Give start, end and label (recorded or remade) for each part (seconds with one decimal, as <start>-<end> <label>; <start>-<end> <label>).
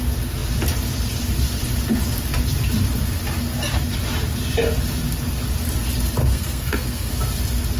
0.0-6.2 recorded; 6.2-7.1 remade; 7.1-7.8 recorded